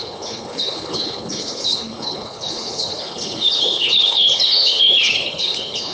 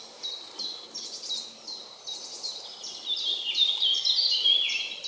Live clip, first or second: second